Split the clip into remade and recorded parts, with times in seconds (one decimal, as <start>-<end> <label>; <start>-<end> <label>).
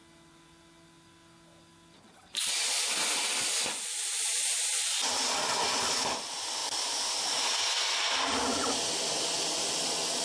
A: 0.0-10.2 recorded